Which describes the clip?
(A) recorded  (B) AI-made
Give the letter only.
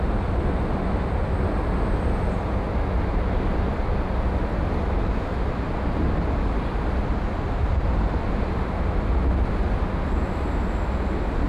A